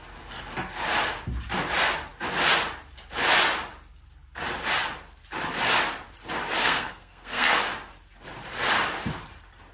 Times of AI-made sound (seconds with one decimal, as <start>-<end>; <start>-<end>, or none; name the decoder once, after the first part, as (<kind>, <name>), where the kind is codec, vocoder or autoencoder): 6.6-7.6 (codec, SNAC)